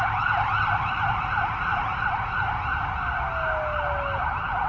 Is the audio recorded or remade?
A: recorded